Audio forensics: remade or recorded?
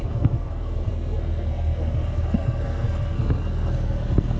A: remade